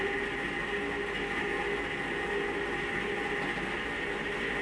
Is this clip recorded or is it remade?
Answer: recorded